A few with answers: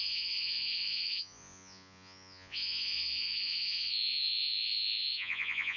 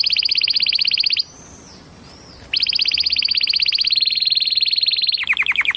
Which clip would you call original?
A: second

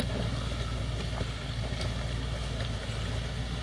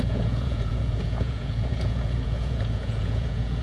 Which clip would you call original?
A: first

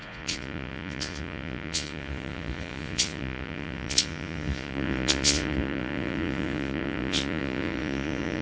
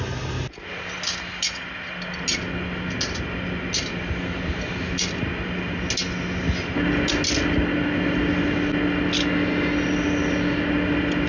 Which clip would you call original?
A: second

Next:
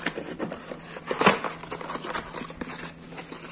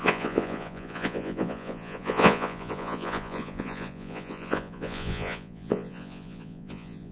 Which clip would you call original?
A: first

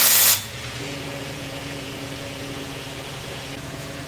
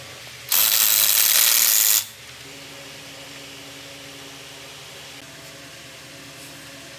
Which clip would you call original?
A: second